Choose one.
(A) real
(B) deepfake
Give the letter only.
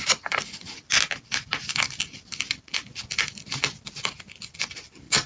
A